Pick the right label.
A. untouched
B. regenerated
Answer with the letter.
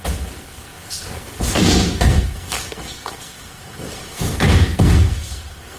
B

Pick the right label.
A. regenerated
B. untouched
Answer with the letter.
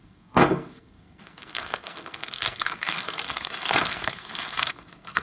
A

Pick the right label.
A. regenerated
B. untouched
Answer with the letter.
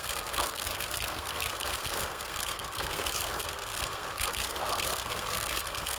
A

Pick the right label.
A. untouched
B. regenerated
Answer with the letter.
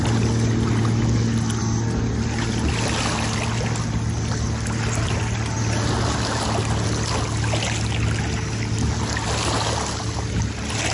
A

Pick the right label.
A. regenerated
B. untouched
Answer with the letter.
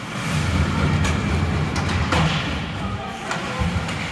B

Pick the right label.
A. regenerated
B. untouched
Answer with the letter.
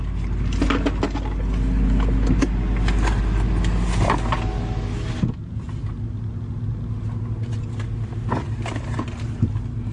B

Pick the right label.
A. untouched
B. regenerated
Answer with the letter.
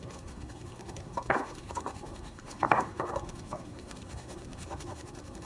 B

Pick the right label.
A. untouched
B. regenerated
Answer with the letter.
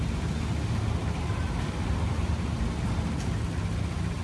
A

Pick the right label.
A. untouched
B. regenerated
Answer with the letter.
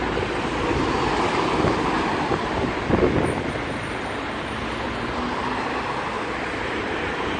A